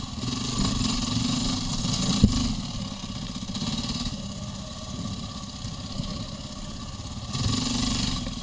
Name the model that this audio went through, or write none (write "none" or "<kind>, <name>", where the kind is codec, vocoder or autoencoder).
none